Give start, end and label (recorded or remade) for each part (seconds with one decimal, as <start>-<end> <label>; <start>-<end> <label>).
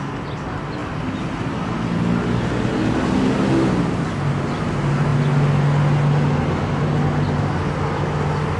0.0-8.6 recorded